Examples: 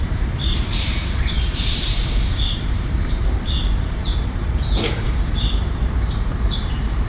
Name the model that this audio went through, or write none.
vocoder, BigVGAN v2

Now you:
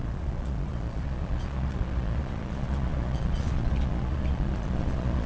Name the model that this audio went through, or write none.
vocoder, Vocos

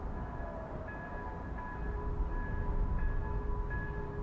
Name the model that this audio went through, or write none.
none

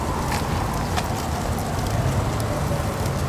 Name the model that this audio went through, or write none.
none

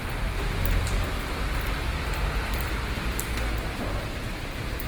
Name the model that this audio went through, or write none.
vocoder, BigVGAN v2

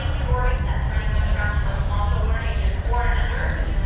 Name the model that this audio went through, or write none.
none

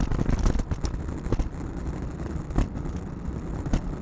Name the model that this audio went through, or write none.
none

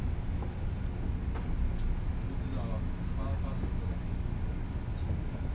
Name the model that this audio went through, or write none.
none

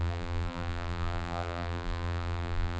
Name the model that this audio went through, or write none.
vocoder, BigVGAN v2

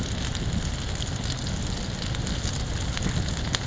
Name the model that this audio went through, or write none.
none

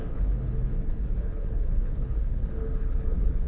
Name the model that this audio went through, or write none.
codec, HILCodec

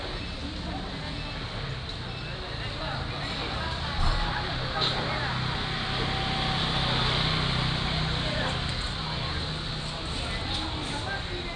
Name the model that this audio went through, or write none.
none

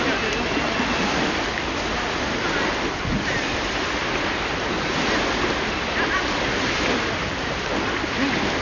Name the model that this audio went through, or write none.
none